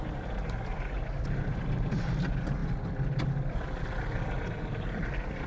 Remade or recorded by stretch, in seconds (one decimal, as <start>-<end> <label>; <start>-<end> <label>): 0.0-5.5 recorded